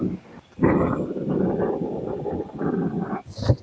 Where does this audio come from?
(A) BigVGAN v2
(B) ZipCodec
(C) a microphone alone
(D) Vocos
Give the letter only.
C